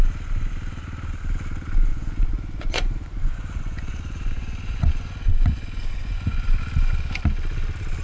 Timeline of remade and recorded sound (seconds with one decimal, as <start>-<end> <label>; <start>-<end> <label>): 0.0-1.9 recorded; 1.9-6.6 remade; 6.6-8.0 recorded